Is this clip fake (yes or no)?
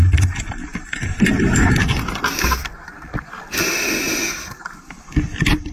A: no